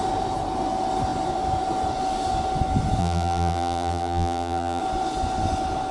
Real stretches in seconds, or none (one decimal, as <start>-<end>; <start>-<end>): 0.0-3.0; 4.8-5.9